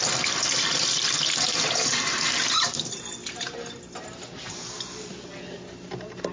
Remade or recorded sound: recorded